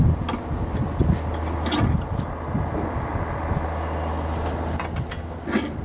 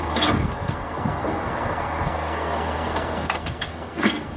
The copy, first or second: second